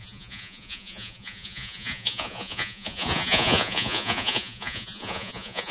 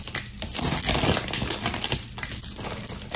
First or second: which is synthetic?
first